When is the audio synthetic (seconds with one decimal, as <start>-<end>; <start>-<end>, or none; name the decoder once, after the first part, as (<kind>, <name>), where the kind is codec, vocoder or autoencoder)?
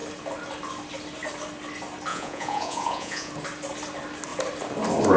2.1-3.3 (vocoder, Vocos)